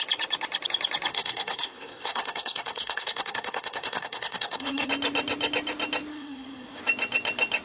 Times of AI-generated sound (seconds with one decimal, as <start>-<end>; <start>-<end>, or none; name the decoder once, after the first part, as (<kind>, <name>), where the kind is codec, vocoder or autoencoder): 1.1-4.9 (codec, SNAC); 6.1-6.8